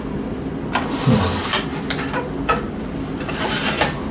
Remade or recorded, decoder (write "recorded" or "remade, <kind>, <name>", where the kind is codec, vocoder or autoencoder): recorded